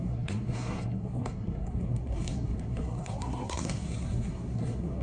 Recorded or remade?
remade